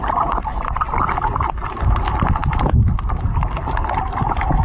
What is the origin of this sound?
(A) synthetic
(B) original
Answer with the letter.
A